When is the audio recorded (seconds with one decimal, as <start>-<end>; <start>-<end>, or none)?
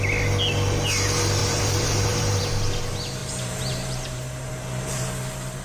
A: 0.0-1.4; 2.4-3.2; 5.1-5.6